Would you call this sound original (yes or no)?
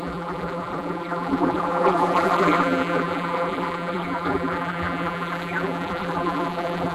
no